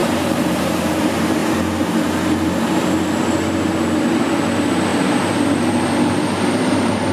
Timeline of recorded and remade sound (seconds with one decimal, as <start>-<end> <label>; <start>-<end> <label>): 0.0-1.0 remade; 1.0-4.9 recorded; 4.9-7.1 remade

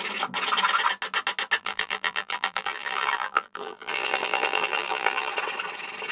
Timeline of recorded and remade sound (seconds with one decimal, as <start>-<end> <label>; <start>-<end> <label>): 0.0-1.6 recorded; 1.6-5.3 remade; 5.3-6.1 recorded

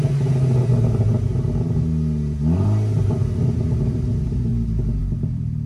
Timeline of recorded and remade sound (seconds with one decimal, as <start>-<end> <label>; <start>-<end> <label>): 0.0-5.0 recorded; 5.0-5.7 remade

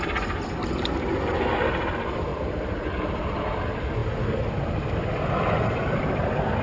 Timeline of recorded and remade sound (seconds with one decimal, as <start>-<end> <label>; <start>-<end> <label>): 0.0-2.3 recorded; 2.3-3.4 remade; 3.4-6.6 recorded

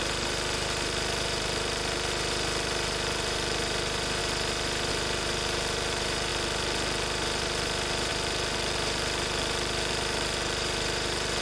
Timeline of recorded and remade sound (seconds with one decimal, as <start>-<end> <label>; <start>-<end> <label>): 0.0-4.2 remade; 4.2-4.9 recorded; 4.9-11.4 remade

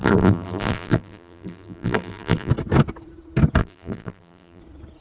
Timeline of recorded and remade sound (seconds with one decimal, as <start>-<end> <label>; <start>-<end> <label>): 0.0-2.5 remade; 2.5-3.6 recorded; 3.6-4.6 remade; 4.6-5.0 recorded

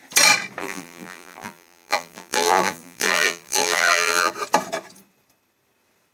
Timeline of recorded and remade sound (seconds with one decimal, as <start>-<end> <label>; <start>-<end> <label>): 0.0-0.6 recorded; 0.6-4.3 remade; 4.3-6.1 recorded